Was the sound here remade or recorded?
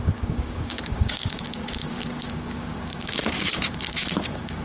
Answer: remade